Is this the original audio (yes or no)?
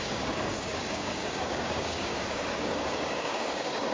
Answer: no